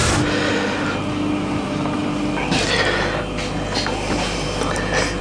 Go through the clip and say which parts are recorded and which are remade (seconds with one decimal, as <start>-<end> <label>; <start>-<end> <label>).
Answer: 0.0-5.2 recorded